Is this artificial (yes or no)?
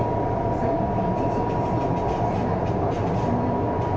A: no